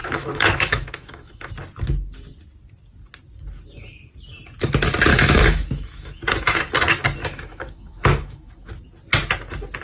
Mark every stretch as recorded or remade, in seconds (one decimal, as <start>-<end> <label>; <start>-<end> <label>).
0.0-1.5 remade; 1.5-5.1 recorded; 5.1-6.2 remade; 6.2-7.2 recorded; 7.2-8.7 remade; 8.7-9.8 recorded